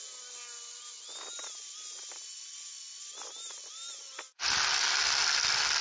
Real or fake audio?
real